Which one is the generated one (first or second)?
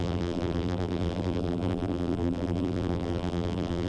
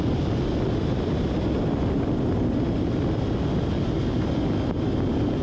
first